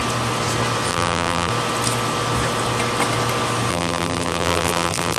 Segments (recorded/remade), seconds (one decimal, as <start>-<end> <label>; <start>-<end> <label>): 0.0-0.9 recorded; 0.9-1.5 remade; 1.5-3.7 recorded; 3.7-5.2 remade